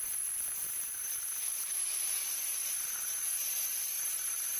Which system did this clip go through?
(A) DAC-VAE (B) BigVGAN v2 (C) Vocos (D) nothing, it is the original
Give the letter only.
D